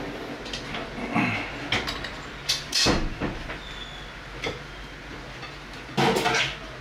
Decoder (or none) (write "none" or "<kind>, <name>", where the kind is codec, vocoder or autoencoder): none